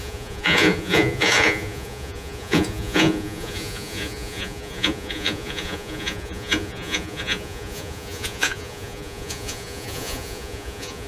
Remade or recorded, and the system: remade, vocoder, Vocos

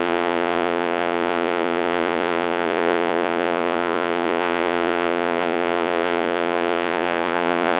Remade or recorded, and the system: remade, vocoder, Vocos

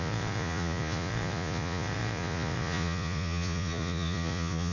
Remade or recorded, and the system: remade, vocoder, Vocos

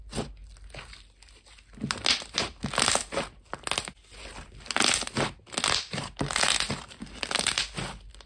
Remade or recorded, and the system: recorded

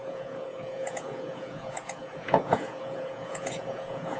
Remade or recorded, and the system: remade, vocoder, Vocos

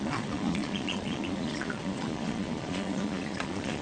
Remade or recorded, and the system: remade, vocoder, Vocos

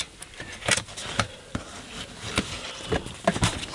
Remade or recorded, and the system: recorded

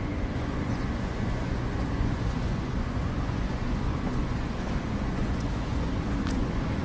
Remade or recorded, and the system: remade, vocoder, Vocos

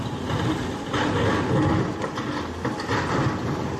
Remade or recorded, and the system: recorded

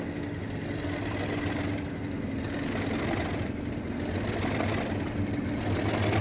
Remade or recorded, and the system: recorded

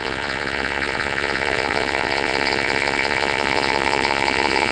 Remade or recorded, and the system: remade, vocoder, Vocos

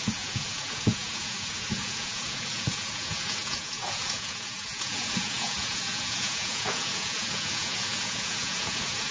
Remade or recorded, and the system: remade, vocoder, Vocos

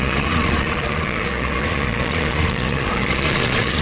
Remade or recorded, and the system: remade, vocoder, Vocos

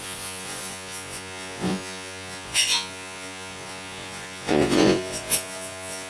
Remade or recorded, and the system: remade, vocoder, Vocos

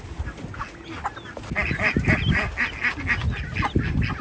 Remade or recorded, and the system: recorded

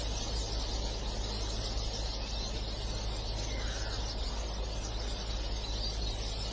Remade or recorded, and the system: recorded